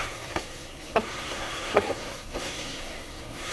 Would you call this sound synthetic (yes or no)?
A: yes